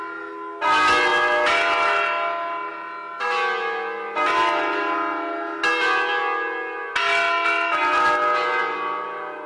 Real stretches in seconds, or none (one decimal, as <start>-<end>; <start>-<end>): 0.0-9.5